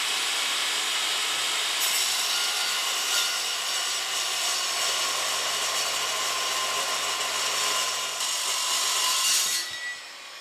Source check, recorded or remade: recorded